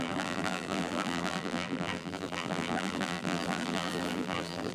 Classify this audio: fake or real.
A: fake